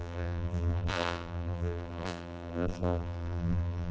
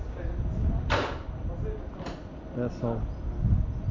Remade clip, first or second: first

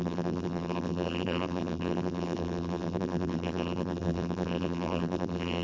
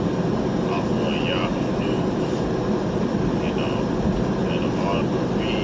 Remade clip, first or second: first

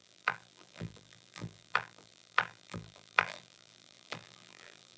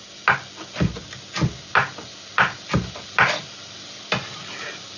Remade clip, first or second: first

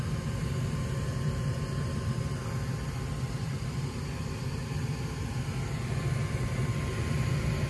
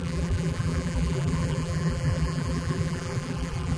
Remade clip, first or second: second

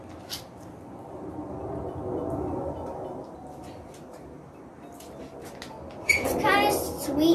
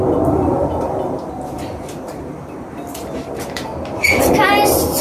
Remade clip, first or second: second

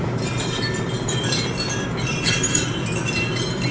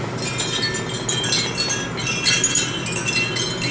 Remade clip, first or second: first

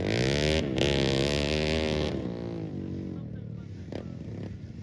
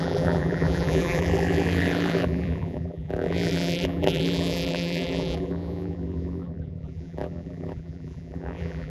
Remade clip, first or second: second